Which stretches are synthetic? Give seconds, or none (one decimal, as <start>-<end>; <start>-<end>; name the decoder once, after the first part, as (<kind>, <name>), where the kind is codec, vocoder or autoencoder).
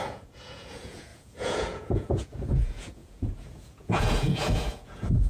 0.0-5.3 (vocoder, Vocos)